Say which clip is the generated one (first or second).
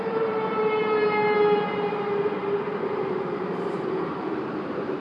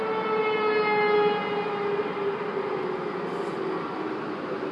first